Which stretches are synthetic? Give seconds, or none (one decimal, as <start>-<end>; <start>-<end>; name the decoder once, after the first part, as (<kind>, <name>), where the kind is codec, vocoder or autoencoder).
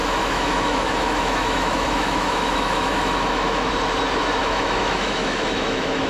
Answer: 0.0-3.7 (autoencoder, DAC-VAE); 4.4-6.1